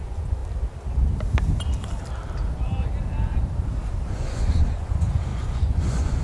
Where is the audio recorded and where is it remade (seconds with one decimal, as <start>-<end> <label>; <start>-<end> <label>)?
0.0-0.4 remade; 0.4-4.1 recorded; 4.1-6.2 remade